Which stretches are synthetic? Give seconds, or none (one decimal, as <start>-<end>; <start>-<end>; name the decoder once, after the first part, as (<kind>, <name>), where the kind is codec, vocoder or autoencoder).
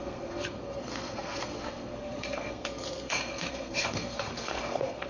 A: 0.0-5.1 (codec, SNAC)